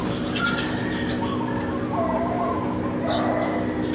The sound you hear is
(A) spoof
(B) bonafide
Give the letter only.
B